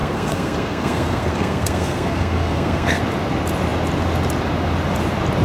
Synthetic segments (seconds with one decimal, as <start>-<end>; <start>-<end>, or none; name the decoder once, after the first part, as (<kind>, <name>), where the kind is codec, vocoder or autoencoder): 0.0-3.0 (codec, SNAC)